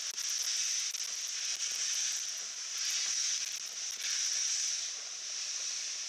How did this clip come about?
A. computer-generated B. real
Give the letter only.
B